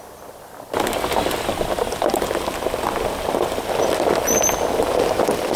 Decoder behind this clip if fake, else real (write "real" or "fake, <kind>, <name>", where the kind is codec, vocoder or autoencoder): fake, vocoder, BigVGAN v2